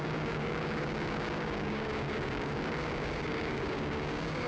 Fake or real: fake